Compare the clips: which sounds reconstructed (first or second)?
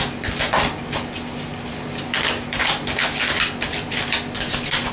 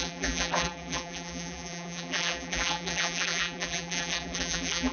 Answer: second